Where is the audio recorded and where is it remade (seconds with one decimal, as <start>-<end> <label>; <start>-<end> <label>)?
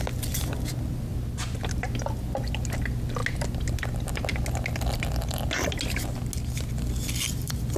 0.0-7.8 recorded